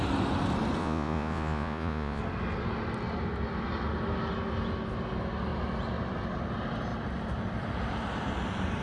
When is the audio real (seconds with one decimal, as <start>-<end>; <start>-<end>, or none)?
0.0-0.8; 2.2-8.8